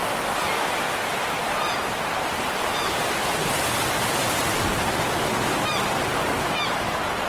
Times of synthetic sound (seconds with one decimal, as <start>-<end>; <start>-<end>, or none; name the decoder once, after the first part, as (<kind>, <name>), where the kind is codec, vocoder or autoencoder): 0.0-0.8 (vocoder, BigVGAN v2)